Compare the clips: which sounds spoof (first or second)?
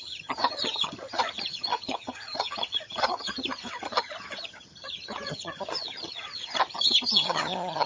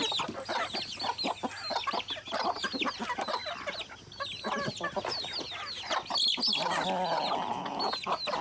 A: first